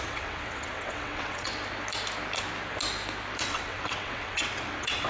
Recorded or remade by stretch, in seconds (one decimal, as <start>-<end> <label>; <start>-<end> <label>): 0.0-1.5 remade; 1.5-3.4 recorded; 3.4-5.1 remade

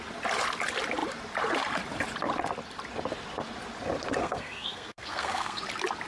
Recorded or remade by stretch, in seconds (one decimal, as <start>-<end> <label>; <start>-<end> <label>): 0.0-4.2 recorded; 4.2-5.6 remade; 5.6-6.1 recorded